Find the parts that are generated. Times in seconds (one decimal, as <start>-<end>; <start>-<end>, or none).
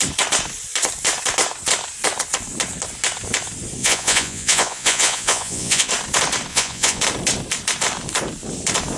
3.8-5.9; 6.5-7.0